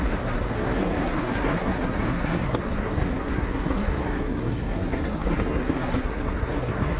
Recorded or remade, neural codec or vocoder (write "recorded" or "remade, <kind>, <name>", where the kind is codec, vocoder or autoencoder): remade, codec, SNAC